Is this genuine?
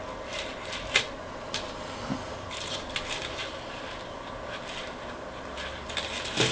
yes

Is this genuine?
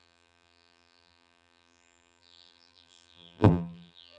no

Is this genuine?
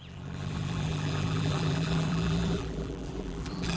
no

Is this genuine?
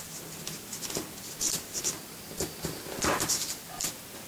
yes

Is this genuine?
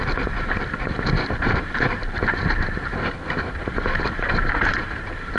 no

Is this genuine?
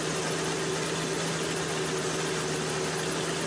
yes